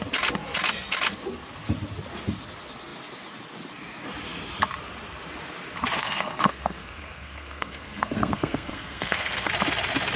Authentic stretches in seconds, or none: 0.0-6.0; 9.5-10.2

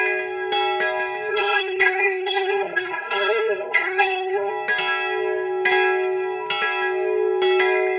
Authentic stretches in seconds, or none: 0.0-1.3; 4.5-8.0